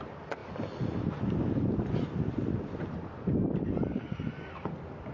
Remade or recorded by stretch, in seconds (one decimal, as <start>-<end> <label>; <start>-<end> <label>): 0.0-5.1 recorded